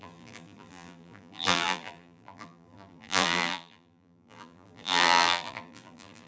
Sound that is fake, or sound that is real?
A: fake